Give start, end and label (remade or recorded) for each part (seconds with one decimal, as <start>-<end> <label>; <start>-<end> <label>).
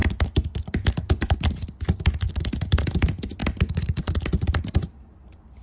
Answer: 0.0-5.6 recorded